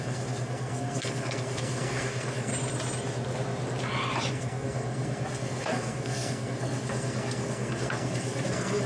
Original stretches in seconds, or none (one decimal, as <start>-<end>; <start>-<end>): 2.5-4.3